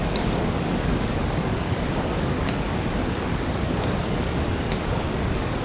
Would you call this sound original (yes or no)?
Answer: no